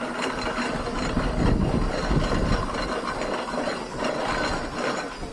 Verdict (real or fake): real